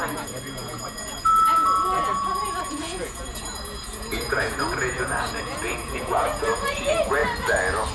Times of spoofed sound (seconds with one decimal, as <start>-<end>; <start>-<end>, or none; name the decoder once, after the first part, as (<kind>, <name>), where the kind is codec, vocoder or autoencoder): 0.0-7.2 (vocoder, Vocos)